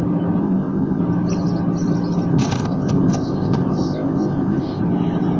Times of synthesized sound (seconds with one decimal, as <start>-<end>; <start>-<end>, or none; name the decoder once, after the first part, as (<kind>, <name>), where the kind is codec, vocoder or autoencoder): 0.4-1.0 (codec, ZipCodec); 2.3-4.8